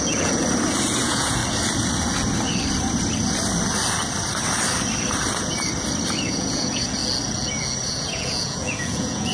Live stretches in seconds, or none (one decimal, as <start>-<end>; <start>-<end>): 0.4-1.0; 1.4-6.3; 7.0-7.9